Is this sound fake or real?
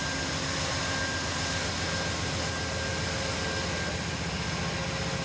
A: real